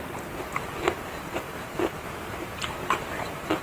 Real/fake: fake